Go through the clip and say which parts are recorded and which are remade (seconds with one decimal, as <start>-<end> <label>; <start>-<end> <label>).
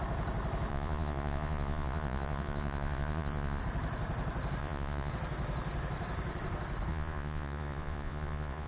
0.0-0.7 recorded; 0.7-3.6 remade; 3.6-4.6 recorded; 4.6-5.1 remade; 5.1-6.9 recorded; 6.9-8.7 remade